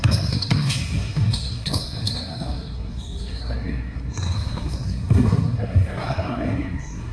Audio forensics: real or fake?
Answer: fake